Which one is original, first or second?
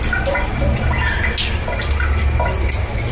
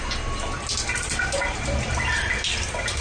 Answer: first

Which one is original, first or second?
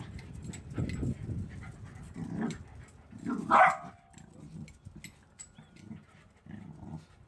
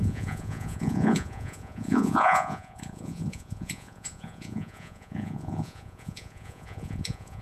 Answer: first